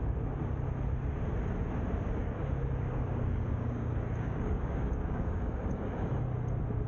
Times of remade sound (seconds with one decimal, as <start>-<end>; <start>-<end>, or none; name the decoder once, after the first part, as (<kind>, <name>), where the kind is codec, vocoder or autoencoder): 2.2-6.2 (codec, DAC)